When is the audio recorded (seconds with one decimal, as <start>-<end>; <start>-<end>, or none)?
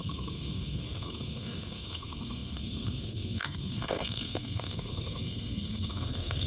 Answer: none